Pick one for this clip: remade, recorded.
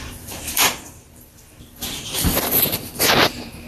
remade